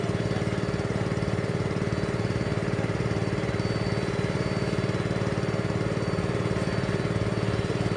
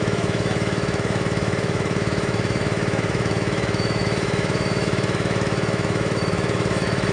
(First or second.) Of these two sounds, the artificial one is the second